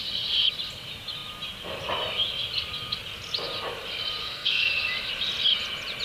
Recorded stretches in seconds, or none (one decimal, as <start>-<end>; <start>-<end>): 0.0-4.2; 4.7-6.0